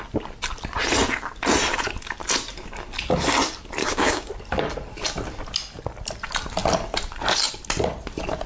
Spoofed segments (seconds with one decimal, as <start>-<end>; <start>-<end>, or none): 3.8-4.3